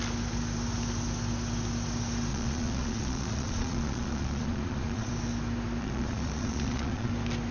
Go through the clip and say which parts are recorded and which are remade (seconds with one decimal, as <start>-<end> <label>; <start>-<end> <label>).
0.0-2.3 recorded; 2.3-5.1 remade; 5.1-5.8 recorded; 5.8-7.1 remade; 7.1-7.5 recorded